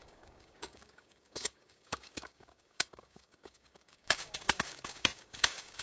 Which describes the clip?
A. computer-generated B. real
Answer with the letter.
A